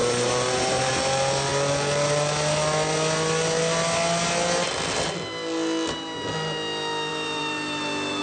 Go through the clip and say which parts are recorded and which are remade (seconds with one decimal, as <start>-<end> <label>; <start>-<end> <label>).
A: 0.0-0.9 remade; 0.9-7.1 recorded; 7.1-8.2 remade